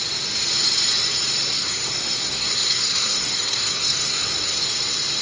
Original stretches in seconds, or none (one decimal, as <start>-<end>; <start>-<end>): 0.0-1.5; 4.6-5.2